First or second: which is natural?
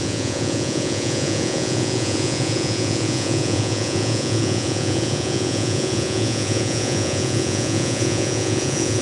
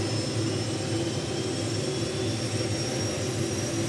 second